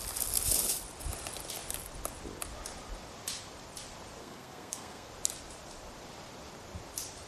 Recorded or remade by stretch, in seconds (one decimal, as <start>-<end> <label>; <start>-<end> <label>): 0.0-4.2 recorded; 4.2-5.1 remade; 5.1-7.3 recorded